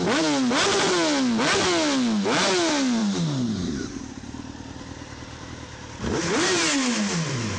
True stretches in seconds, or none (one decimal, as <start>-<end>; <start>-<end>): 0.0-3.0